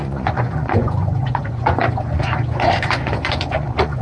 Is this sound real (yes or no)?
no